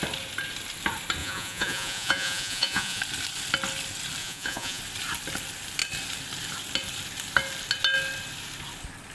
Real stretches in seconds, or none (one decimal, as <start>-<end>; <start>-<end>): 0.0-1.2; 3.0-4.2; 4.8-9.1

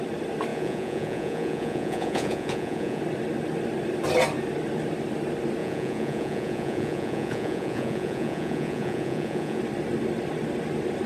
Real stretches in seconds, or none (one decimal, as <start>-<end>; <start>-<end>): 0.0-0.5; 3.0-5.6; 9.6-11.1

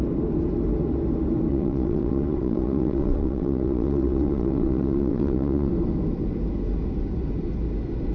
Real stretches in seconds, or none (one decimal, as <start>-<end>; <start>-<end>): 0.0-1.5; 5.7-8.1

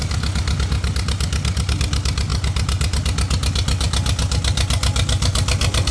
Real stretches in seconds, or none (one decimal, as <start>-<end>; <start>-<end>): 0.0-5.9

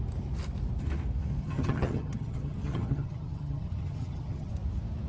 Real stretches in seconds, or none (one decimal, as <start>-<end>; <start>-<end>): 0.0-1.4; 4.5-5.1